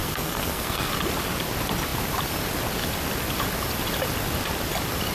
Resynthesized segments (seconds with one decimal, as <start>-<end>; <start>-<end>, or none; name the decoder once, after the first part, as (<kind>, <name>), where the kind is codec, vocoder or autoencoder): 0.0-0.9 (codec, SNAC)